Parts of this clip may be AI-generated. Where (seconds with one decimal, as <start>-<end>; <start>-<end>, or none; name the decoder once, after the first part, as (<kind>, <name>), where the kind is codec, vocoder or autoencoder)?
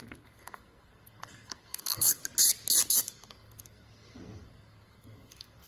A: 0.0-2.2 (codec, SNAC); 2.9-5.7